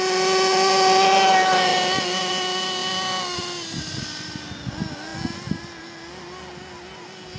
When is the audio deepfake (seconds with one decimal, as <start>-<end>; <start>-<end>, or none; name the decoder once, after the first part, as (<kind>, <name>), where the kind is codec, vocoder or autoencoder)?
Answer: none